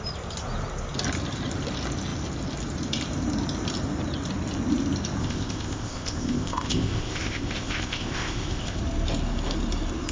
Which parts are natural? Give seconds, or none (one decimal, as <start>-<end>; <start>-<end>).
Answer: 0.0-5.2; 8.8-10.1